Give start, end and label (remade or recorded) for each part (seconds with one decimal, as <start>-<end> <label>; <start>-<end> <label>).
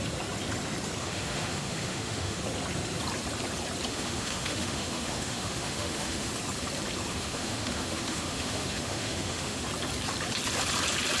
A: 0.0-1.0 recorded; 1.0-2.4 remade; 2.4-3.9 recorded; 3.9-6.3 remade; 6.3-7.1 recorded; 7.1-9.6 remade; 9.6-11.2 recorded